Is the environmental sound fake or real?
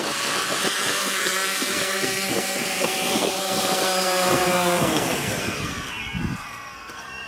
fake